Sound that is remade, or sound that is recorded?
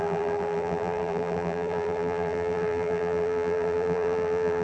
remade